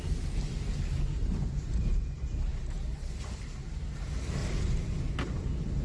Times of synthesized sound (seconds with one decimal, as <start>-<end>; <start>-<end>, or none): 4.4-5.1